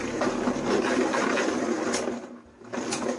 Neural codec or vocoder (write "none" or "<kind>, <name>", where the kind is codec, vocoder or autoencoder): none